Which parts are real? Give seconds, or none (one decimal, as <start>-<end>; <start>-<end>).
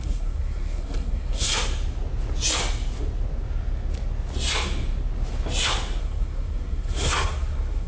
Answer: 1.5-6.0